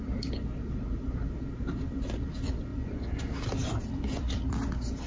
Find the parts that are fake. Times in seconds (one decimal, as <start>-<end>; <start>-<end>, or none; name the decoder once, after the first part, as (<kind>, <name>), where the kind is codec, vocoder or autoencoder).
2.7-3.2 (vocoder, Vocos)